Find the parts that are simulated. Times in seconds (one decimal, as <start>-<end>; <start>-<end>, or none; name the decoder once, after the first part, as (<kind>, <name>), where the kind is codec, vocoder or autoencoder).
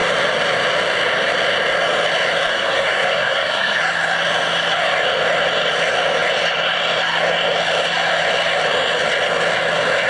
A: 2.5-3.8 (codec, SNAC)